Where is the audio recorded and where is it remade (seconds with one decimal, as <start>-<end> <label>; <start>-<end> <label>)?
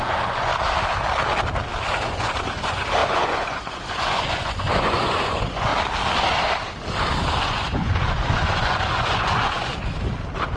0.0-0.5 remade; 0.5-1.9 recorded; 1.9-5.7 remade; 5.7-7.4 recorded; 7.4-9.7 remade; 9.7-10.6 recorded